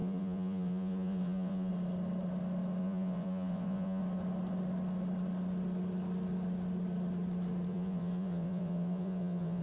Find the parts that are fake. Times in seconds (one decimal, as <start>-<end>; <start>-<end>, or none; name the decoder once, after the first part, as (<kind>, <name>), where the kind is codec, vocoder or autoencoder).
0.0-1.7 (vocoder, Vocos); 2.8-4.0; 7.7-9.6